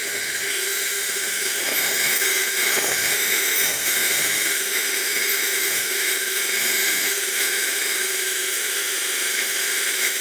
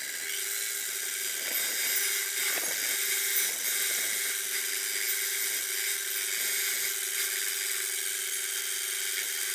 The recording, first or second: second